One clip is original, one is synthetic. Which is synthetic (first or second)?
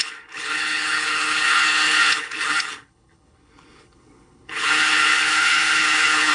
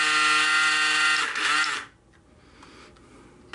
first